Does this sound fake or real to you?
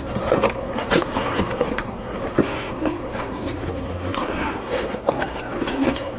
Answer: fake